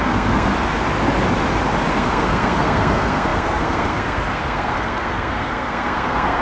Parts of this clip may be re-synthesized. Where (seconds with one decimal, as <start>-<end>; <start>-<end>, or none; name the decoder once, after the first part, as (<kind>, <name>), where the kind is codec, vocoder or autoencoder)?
0.0-0.5 (codec, SNAC); 1.9-6.4

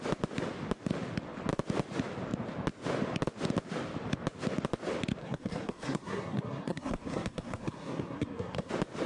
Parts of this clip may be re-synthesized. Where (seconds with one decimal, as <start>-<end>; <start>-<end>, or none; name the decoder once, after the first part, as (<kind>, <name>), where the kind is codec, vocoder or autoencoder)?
5.2-8.7 (codec, SNAC)

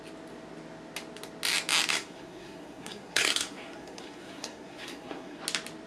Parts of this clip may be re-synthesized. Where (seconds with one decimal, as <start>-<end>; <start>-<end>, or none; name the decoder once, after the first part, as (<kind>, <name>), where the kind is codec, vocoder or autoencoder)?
1.9-5.4 (codec, SNAC)

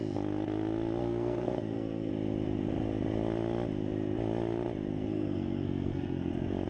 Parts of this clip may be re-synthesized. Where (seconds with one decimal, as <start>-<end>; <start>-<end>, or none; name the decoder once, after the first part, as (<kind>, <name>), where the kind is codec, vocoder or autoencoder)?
1.0-2.1 (codec, SNAC); 4.9-6.3

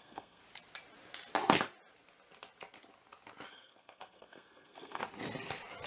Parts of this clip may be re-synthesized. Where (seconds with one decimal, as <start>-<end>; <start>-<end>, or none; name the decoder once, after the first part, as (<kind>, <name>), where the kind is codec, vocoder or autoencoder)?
0.0-0.4 (codec, SNAC); 3.5-5.0

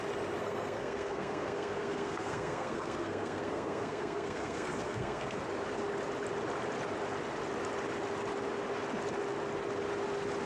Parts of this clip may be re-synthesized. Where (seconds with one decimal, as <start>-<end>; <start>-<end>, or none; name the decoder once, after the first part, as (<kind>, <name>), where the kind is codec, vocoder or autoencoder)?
0.4-5.4 (codec, SNAC)